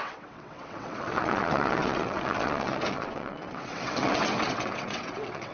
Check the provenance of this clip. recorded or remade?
remade